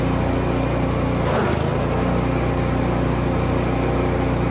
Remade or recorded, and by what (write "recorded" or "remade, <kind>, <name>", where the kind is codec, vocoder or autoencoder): recorded